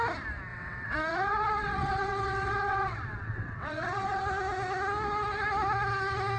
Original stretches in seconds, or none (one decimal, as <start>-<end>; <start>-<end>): 0.0-0.5; 4.2-6.4